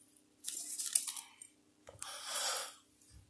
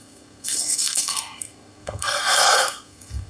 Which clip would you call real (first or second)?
first